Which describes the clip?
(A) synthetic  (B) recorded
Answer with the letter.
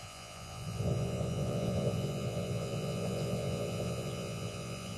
A